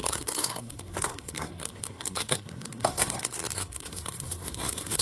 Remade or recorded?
remade